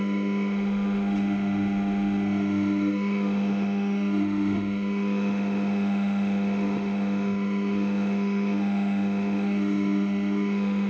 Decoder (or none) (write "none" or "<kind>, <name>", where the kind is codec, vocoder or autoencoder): autoencoder, DAC-VAE